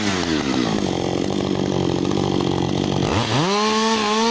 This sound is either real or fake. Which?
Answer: real